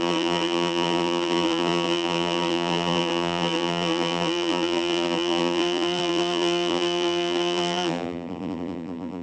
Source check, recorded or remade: remade